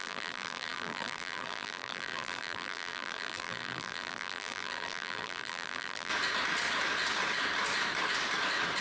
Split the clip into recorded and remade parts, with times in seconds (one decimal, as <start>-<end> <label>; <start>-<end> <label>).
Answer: 0.0-6.1 remade; 6.1-8.8 recorded